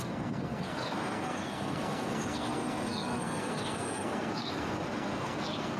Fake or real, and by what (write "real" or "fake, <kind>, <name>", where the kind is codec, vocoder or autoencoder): fake, codec, SNAC